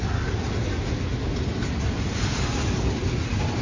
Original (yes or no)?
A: yes